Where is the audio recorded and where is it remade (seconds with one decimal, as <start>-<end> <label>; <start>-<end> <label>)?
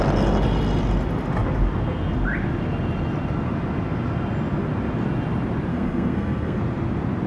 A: 0.0-5.7 recorded; 5.7-6.6 remade; 6.6-7.3 recorded